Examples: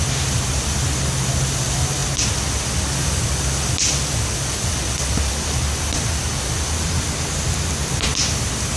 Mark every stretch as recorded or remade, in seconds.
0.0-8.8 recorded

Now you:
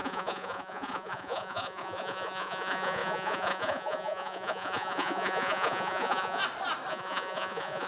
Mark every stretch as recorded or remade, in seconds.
0.0-6.4 remade; 6.4-6.9 recorded; 6.9-7.9 remade

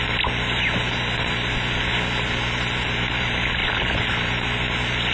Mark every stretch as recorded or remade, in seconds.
0.0-3.6 recorded; 3.6-4.3 remade; 4.3-5.1 recorded

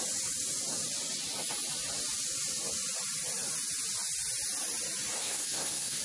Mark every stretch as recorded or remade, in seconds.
0.0-5.2 recorded; 5.2-6.0 remade